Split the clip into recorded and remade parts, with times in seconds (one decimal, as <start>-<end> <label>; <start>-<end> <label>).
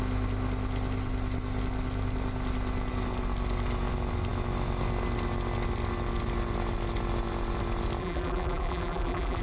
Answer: 0.0-8.0 recorded; 8.0-9.4 remade